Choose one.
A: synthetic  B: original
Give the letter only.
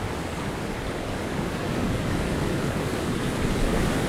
A